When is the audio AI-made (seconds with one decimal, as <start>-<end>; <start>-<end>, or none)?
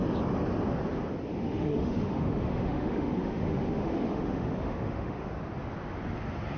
1.3-5.3